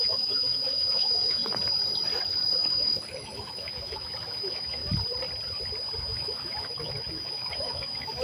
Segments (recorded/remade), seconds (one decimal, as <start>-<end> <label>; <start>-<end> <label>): 0.0-1.4 remade; 1.4-2.7 recorded; 2.7-4.8 remade; 4.8-6.0 recorded; 6.0-8.2 remade